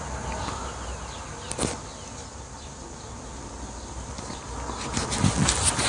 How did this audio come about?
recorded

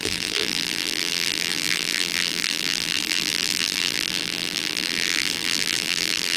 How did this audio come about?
remade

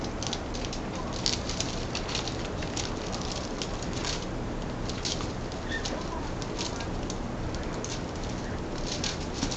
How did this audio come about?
recorded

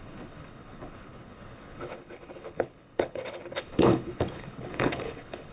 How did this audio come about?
remade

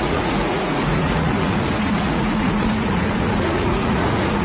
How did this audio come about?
remade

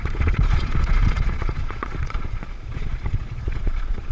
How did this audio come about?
remade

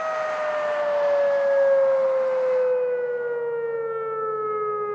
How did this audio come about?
recorded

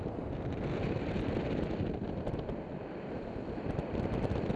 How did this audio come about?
recorded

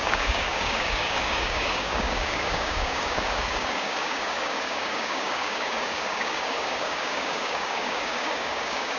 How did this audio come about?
remade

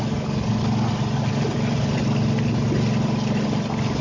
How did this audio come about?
recorded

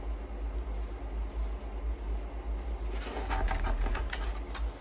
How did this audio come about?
recorded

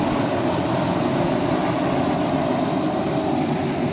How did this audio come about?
recorded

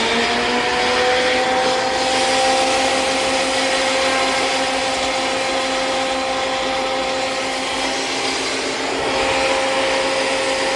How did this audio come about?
recorded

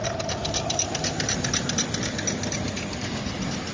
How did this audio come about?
recorded